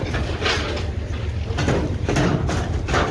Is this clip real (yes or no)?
yes